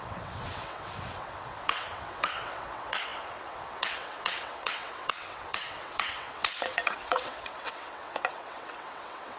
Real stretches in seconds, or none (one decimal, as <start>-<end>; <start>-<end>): none